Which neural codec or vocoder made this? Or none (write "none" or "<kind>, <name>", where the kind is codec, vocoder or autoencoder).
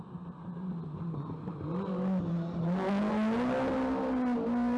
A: none